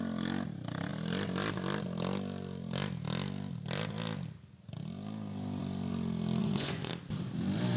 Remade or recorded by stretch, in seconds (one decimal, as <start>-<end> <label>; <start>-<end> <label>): 0.0-6.4 recorded; 6.4-6.9 remade; 6.9-7.8 recorded